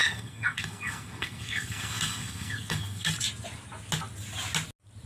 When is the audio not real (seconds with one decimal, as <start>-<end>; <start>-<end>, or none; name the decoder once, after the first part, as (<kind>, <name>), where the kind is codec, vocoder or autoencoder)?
0.0-3.1 (codec, SNAC)